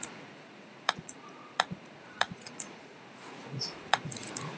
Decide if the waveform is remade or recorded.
remade